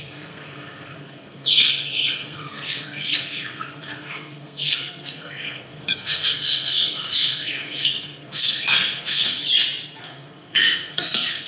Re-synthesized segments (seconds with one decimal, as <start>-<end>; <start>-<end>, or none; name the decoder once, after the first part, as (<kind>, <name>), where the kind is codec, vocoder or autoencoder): 0.0-9.4 (codec, SNAC); 10.0-11.5